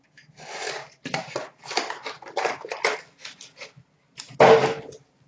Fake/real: real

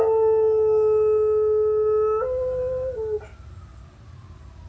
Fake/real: real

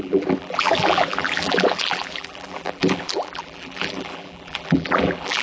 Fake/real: fake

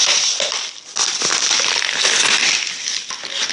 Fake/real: real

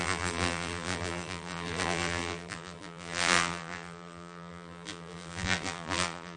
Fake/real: fake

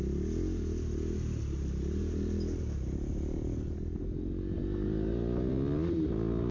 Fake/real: real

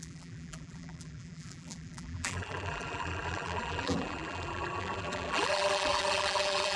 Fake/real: fake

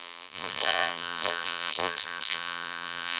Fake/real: fake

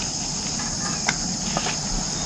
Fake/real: real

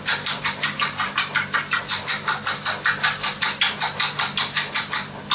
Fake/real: real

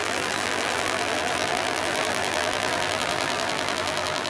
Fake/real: fake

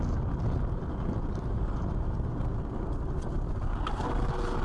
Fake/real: real